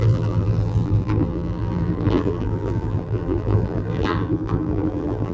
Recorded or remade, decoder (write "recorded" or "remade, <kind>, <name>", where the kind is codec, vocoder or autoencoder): remade, vocoder, BigVGAN v2